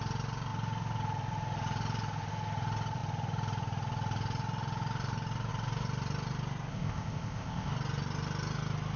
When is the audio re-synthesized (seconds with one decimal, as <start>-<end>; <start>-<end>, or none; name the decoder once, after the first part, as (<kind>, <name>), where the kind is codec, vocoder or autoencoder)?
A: 6.7-7.7 (codec, ZipCodec)